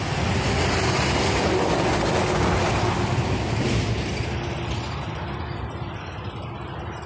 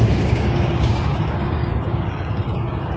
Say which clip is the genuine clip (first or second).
first